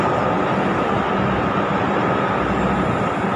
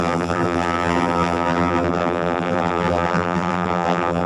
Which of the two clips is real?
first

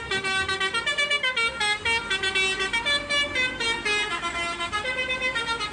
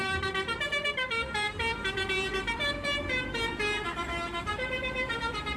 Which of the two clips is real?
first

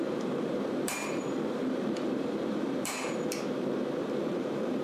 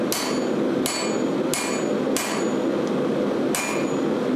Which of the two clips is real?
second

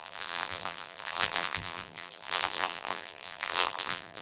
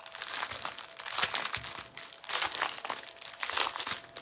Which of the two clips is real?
second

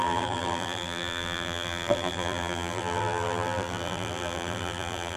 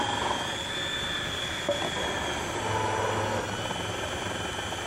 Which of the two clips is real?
second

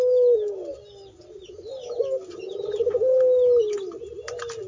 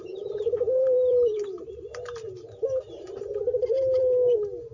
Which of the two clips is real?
first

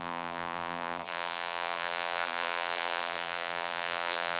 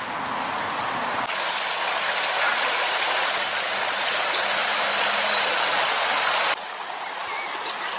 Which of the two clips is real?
second